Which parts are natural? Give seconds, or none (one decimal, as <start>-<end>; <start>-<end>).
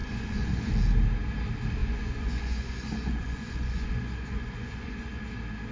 0.7-1.8; 5.2-5.7